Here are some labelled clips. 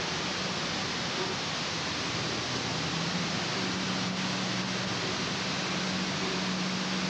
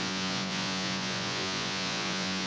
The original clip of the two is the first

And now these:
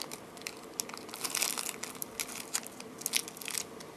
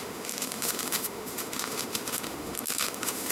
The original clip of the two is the first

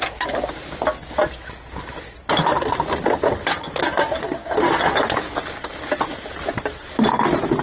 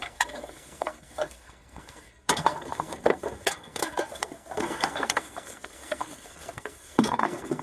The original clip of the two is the first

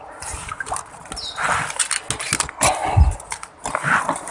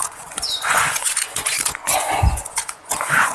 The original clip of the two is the first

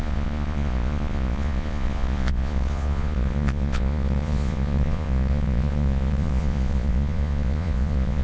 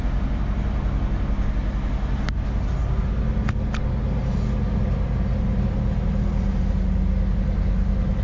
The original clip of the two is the second